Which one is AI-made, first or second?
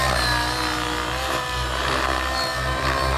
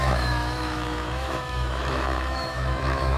second